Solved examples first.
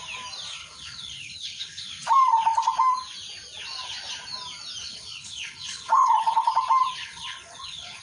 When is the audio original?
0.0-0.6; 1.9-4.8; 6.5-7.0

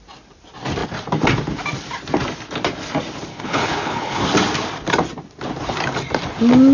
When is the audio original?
0.0-3.3; 4.2-6.7